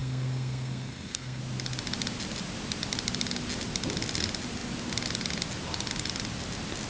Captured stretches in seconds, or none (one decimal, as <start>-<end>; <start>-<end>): 1.4-6.9

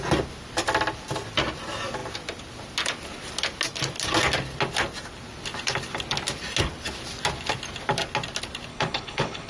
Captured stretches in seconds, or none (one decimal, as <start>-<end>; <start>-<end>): 0.0-8.7

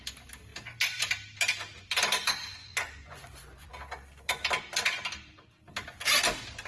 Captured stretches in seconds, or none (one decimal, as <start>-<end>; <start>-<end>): 0.0-2.6; 3.7-6.7